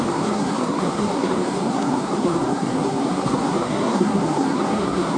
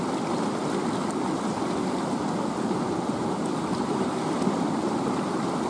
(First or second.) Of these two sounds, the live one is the second